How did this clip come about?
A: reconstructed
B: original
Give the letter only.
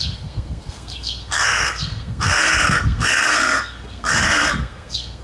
A